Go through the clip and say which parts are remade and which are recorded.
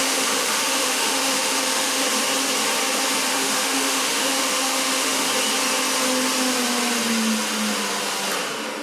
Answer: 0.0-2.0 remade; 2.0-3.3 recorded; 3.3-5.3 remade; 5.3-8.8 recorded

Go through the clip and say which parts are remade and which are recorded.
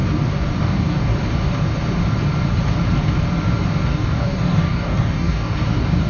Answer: 0.0-0.6 recorded; 0.6-1.1 remade; 1.1-3.9 recorded; 3.9-6.1 remade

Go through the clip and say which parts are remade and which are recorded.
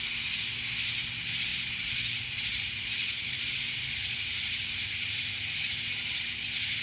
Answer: 0.0-1.5 recorded; 1.5-5.3 remade; 5.3-6.8 recorded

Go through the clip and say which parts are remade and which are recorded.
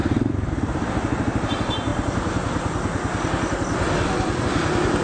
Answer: 0.0-1.9 remade; 1.9-4.4 recorded; 4.4-5.0 remade